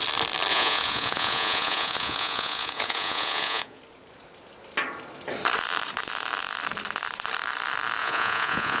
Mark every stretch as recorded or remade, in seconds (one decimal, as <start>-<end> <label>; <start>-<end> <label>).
0.0-0.5 recorded; 0.5-3.8 remade; 3.8-8.0 recorded; 8.0-8.8 remade